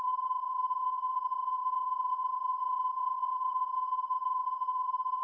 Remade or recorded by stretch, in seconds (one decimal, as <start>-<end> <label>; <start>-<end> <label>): 0.0-5.2 remade